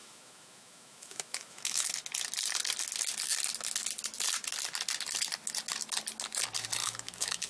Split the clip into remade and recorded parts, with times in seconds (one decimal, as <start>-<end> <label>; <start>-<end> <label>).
0.0-1.9 remade; 1.9-6.8 recorded; 6.8-7.5 remade